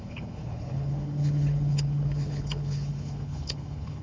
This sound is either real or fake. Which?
fake